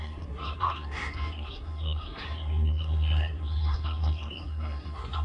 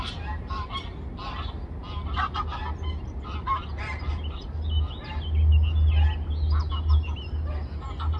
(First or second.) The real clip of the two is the second